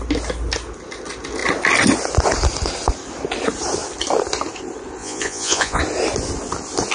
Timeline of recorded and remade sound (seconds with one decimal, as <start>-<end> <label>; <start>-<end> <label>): 0.0-5.0 recorded; 5.0-5.8 remade; 5.8-6.9 recorded

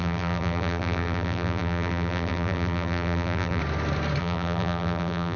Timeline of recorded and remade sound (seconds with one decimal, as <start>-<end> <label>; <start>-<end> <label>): 0.0-3.6 remade; 3.6-4.2 recorded; 4.2-5.4 remade

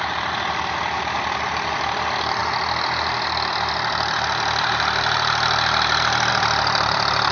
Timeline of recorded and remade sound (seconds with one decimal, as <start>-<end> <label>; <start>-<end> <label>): 0.0-2.4 remade; 2.4-6.3 recorded; 6.3-7.3 remade

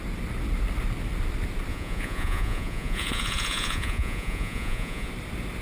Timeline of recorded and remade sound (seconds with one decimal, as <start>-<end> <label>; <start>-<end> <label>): 0.0-1.7 recorded; 1.7-5.1 remade; 5.1-5.6 recorded

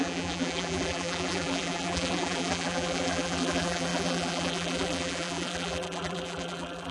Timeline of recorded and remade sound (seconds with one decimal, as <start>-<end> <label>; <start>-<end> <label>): 0.0-6.9 remade

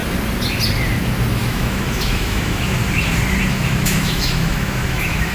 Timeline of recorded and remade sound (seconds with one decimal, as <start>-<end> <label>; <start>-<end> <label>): 0.0-1.3 recorded; 1.3-2.8 remade; 2.8-3.5 recorded; 3.5-5.3 remade

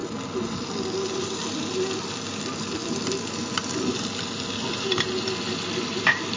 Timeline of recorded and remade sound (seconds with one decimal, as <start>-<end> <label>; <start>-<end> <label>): 0.0-6.4 recorded

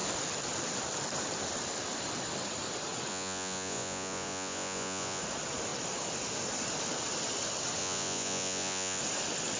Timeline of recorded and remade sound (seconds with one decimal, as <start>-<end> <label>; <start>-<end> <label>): 0.0-3.1 recorded; 3.1-5.2 remade; 5.2-7.8 recorded; 7.8-9.0 remade; 9.0-9.6 recorded